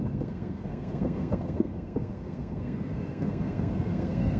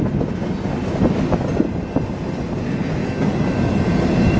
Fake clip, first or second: first